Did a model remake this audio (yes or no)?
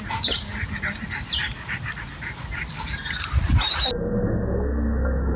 no